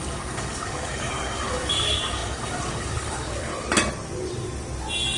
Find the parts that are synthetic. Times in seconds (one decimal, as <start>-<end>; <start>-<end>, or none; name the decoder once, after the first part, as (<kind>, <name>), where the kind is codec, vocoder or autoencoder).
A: 0.0-3.5 (codec, DAC)